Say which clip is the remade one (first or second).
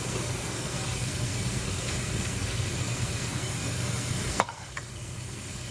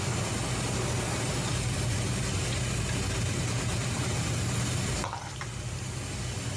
first